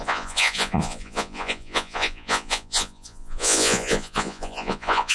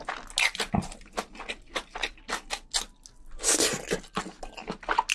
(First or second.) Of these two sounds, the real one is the second